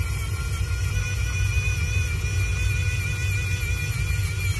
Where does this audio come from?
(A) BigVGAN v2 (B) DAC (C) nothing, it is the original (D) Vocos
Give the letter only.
C